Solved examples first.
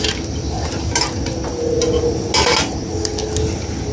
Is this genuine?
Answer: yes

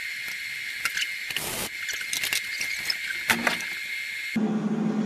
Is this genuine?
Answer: yes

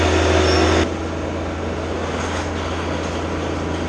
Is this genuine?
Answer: yes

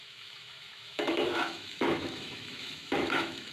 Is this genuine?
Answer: no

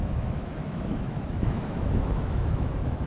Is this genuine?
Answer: no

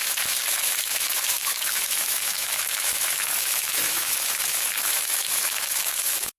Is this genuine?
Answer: no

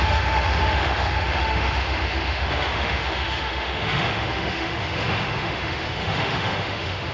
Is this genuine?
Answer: no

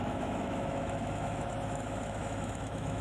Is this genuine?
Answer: no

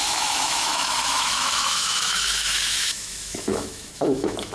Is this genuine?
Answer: no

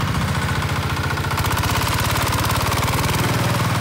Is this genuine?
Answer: yes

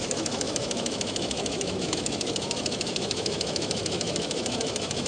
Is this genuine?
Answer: no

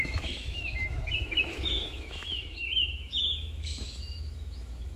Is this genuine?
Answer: no